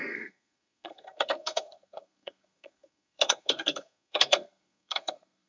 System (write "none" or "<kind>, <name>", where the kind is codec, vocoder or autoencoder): codec, SNAC